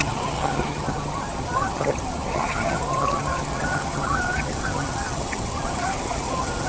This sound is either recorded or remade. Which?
remade